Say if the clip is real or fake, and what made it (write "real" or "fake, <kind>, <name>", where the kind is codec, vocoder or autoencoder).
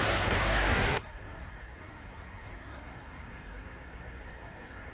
fake, codec, SNAC